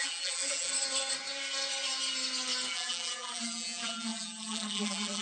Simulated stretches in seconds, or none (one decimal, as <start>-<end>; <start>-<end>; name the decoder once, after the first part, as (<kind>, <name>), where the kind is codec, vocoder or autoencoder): 0.0-0.7 (vocoder, BigVGAN v2); 2.7-5.2